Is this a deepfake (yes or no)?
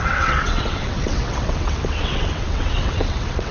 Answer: yes